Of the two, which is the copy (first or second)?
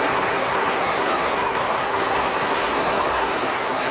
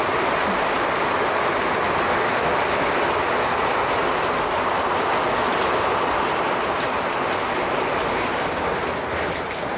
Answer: first